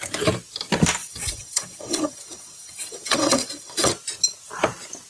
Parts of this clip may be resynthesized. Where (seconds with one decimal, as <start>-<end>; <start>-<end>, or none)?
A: 1.0-3.9